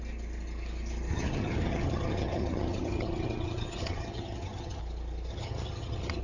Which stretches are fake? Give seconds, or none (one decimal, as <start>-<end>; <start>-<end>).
1.1-4.8; 5.3-6.2